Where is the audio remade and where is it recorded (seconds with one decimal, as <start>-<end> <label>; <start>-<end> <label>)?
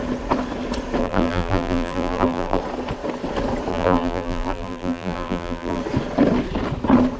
0.0-1.0 recorded; 1.0-2.6 remade; 2.6-3.7 recorded; 3.7-5.8 remade; 5.8-7.2 recorded